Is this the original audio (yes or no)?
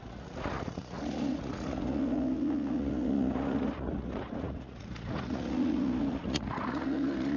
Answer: no